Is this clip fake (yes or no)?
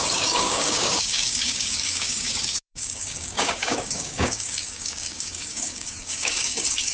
yes